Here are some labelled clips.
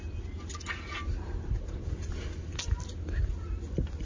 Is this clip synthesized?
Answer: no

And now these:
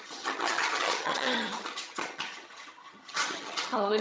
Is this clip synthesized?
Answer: yes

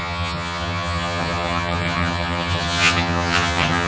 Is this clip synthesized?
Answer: yes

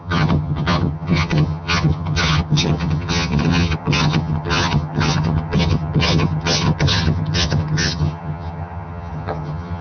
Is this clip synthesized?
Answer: yes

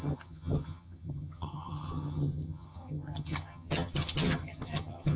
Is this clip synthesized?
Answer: yes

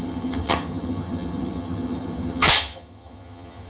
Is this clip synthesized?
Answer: yes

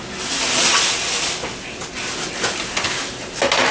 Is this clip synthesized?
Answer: no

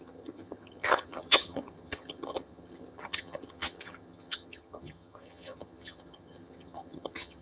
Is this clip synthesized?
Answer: yes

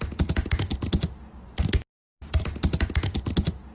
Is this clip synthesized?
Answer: no